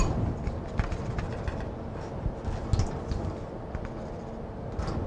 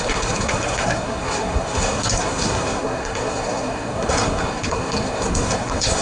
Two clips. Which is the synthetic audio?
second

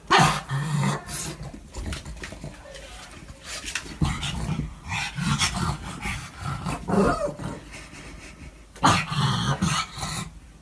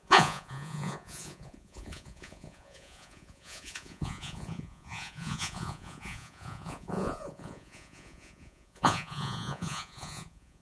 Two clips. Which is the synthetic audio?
second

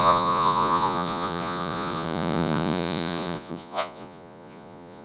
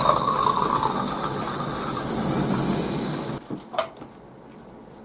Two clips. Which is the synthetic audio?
first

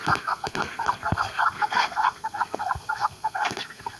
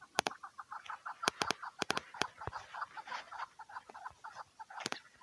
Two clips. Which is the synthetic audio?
first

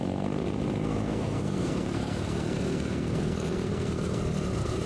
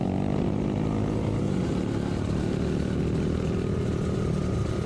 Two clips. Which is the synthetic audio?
first